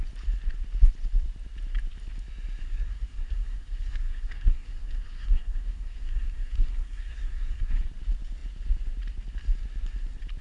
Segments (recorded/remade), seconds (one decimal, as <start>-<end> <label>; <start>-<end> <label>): 0.0-2.6 recorded; 2.6-7.7 remade; 7.7-10.4 recorded